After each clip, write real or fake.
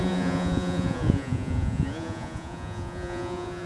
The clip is fake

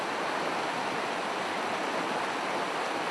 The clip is real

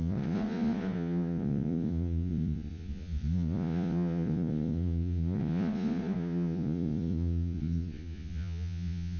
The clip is fake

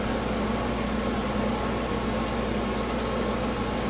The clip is real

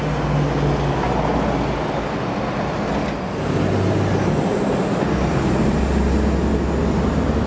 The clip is real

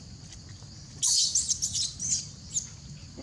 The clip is real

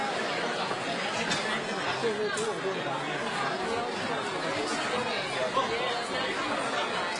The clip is real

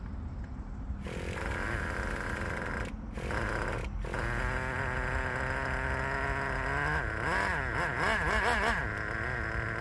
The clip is real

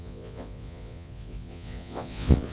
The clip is fake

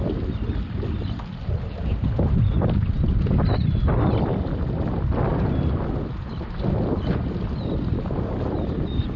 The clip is real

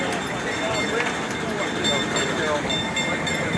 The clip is real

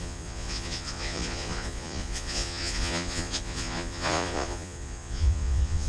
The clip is fake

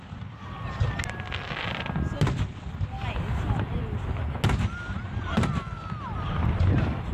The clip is real